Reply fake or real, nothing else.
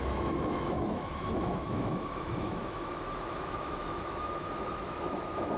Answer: fake